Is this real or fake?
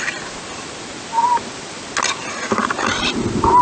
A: real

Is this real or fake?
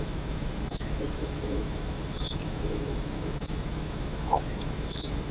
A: fake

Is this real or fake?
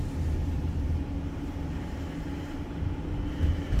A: fake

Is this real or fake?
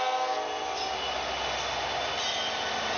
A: real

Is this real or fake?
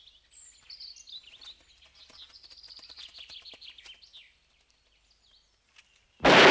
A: real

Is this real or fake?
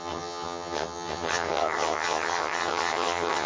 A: fake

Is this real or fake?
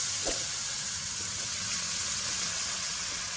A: fake